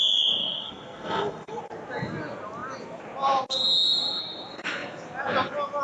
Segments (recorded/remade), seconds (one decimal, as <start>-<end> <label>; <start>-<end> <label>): 0.0-0.4 recorded; 0.4-1.6 remade; 1.6-5.8 recorded